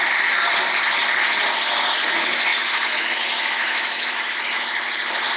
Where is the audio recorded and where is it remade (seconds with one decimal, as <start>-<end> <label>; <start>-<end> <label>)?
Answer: 0.0-2.5 recorded; 2.5-4.4 remade; 4.4-5.4 recorded